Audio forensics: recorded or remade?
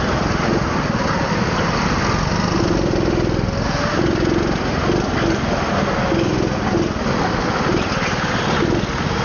recorded